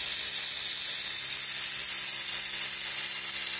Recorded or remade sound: recorded